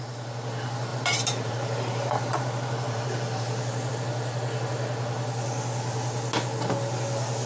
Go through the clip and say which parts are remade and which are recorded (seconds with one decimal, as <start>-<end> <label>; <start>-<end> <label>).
0.0-0.9 recorded; 0.9-3.9 remade; 3.9-7.5 recorded